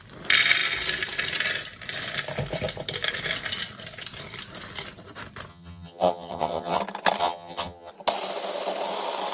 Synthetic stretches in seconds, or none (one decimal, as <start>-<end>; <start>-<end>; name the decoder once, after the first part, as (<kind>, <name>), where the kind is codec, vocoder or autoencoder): 5.5-6.8 (vocoder, HiFi-GAN); 7.2-7.9